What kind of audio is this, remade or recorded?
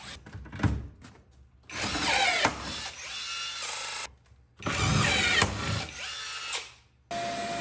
recorded